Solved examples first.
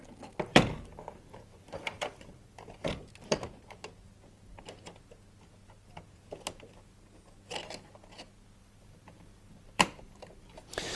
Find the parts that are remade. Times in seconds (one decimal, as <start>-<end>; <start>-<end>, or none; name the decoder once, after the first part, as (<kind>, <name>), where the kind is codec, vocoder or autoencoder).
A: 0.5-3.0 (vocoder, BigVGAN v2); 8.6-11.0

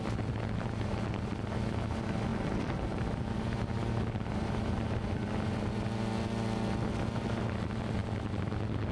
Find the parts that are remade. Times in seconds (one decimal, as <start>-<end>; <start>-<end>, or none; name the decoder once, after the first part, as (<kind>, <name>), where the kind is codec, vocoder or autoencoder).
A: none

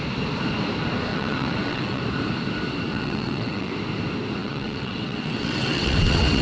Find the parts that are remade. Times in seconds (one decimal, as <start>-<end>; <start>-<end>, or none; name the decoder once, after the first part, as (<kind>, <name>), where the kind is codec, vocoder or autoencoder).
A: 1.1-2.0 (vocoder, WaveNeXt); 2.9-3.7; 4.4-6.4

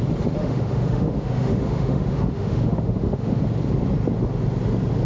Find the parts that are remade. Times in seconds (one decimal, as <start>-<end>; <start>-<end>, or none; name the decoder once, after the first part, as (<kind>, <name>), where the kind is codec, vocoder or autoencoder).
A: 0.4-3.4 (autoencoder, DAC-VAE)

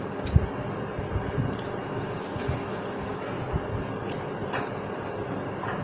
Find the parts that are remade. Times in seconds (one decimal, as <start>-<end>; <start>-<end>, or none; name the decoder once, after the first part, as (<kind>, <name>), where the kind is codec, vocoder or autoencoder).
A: 1.8-3.3 (autoencoder, DAC-VAE)

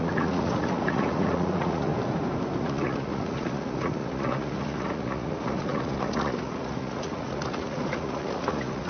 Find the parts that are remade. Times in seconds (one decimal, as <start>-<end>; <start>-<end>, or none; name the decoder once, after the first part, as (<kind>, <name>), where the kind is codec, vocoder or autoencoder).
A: 0.0-1.9 (vocoder, Vocos); 2.6-8.9